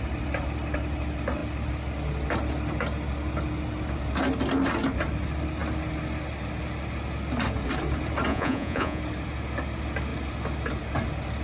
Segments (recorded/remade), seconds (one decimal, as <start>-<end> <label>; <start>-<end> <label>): 0.0-8.3 recorded; 8.3-9.0 remade; 9.0-11.4 recorded